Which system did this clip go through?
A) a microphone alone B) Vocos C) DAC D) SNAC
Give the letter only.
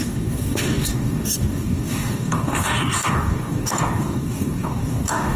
C